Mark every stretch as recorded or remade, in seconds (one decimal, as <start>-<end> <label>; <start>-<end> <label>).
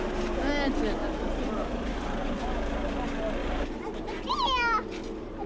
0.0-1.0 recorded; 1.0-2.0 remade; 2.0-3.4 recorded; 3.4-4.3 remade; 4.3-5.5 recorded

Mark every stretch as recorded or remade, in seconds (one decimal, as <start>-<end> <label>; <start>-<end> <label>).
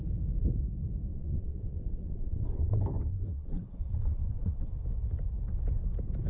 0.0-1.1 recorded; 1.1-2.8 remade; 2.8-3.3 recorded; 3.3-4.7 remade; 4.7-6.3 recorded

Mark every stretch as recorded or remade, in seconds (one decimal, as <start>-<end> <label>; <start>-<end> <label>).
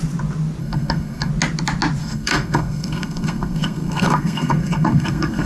0.0-0.6 recorded; 0.6-1.3 remade; 1.3-2.0 recorded; 2.0-5.5 remade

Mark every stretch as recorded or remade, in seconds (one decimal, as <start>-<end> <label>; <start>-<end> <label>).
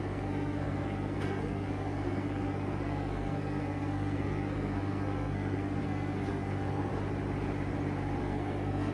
0.0-6.9 remade; 6.9-8.2 recorded; 8.2-8.9 remade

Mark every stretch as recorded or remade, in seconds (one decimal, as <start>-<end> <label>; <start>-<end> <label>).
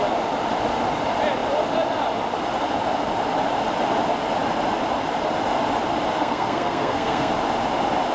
0.0-6.2 recorded; 6.2-7.3 remade; 7.3-8.1 recorded